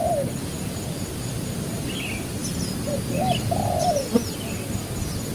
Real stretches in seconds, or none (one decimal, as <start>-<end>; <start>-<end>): 0.0-5.3